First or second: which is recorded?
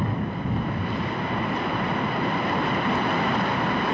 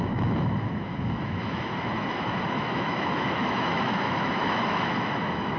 first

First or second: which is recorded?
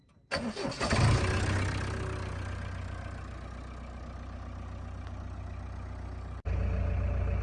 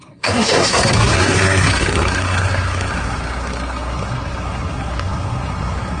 first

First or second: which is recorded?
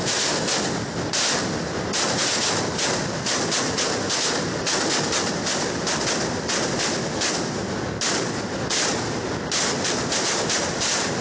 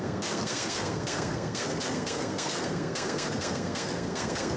first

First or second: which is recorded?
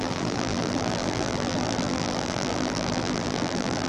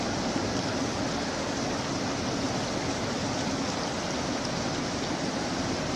second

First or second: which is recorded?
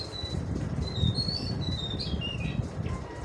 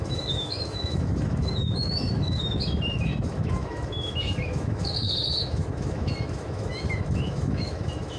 first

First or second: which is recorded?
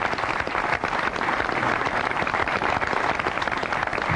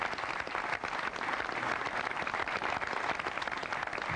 second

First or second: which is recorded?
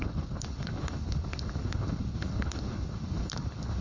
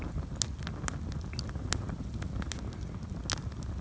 second